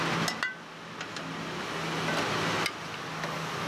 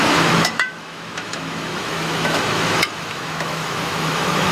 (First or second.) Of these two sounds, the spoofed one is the second